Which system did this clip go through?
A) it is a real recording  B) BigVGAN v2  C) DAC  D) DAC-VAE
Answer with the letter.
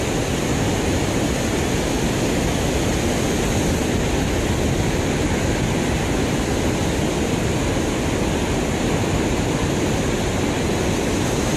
A